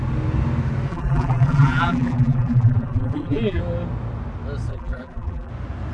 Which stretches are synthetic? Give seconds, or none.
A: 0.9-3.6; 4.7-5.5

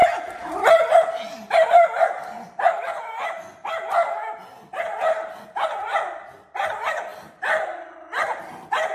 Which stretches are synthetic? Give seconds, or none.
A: none

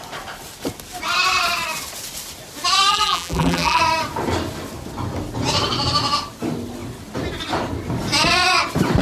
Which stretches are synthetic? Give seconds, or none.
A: 2.9-3.8